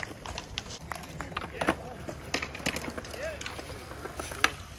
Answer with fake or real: real